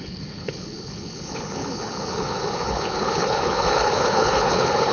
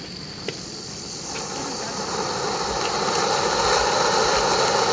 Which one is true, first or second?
second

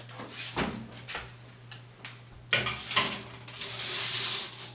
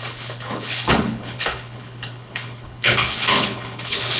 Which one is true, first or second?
first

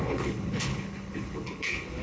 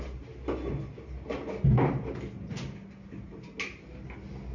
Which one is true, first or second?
second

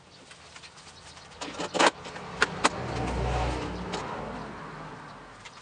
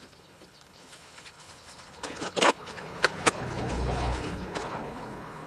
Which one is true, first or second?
first